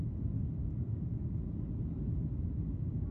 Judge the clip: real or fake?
real